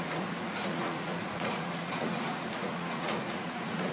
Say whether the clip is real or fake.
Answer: fake